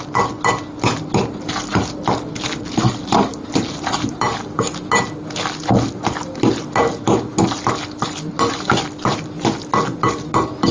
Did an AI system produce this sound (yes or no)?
no